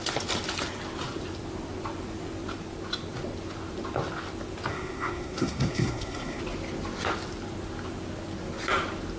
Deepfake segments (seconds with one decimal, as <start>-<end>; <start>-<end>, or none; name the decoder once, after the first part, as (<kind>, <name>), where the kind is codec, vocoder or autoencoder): 4.7-6.4 (codec, SNAC)